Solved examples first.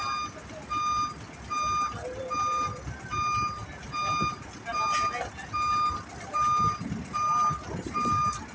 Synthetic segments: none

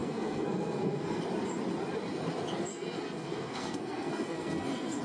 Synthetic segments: 0.0-1.2 (codec, SNAC); 2.7-5.0

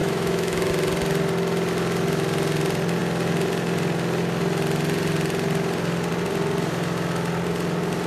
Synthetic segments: 0.0-0.7 (autoencoder, DAC-VAE)

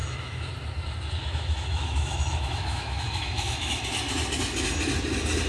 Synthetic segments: 0.0-0.5 (autoencoder, DAC-VAE); 1.2-3.8

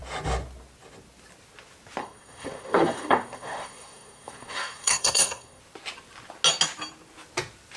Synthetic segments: 2.0-5.6 (codec, SNAC)

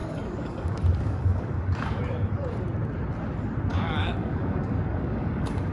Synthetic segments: 0.0-2.0 (codec, DAC); 3.7-5.7